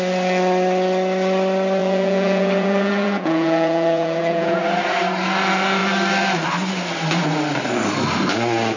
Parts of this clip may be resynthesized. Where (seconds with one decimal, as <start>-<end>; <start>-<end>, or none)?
1.8-4.6

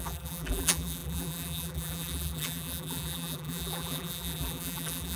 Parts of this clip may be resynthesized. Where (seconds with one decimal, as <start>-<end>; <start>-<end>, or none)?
0.0-5.2

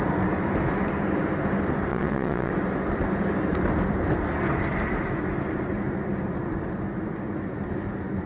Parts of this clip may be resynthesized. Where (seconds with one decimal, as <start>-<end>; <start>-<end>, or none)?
1.9-2.5

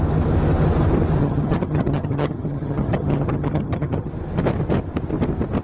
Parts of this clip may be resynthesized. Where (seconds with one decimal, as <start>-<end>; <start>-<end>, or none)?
1.2-4.1